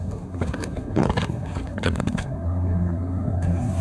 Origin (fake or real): fake